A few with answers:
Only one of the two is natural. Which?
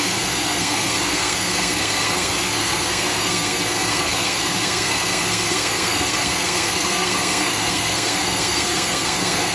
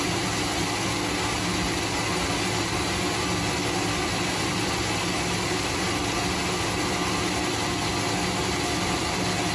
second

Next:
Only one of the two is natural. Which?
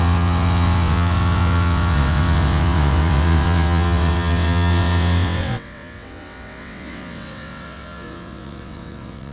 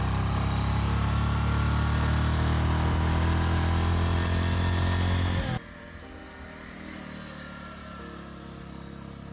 second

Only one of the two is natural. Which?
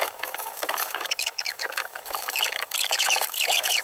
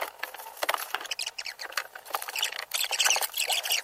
second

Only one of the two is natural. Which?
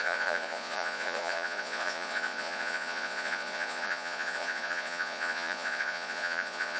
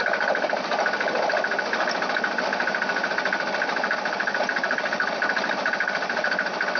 second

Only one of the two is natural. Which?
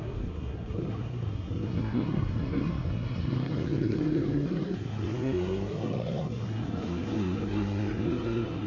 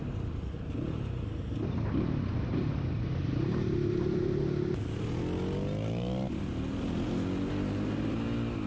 second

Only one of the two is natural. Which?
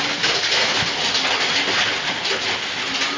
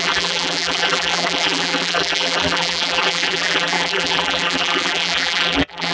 first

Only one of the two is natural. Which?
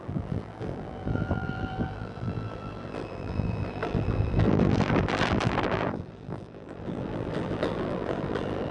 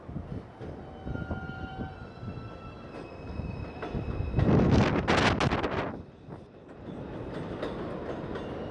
second